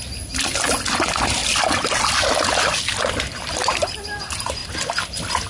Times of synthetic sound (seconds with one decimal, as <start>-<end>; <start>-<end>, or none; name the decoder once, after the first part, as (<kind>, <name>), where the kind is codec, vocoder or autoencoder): none